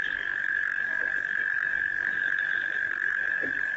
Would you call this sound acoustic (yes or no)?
no